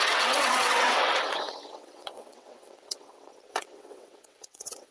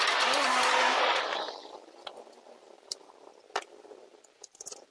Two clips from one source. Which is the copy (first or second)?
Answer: first